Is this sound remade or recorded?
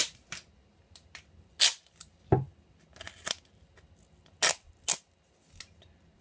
recorded